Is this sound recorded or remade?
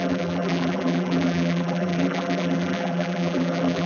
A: remade